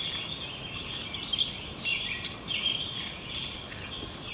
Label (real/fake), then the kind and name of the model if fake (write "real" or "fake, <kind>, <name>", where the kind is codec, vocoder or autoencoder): real